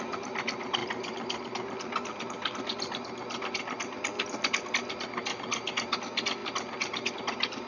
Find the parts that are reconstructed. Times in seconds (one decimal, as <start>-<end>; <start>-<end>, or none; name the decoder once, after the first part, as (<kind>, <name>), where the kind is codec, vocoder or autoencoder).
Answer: none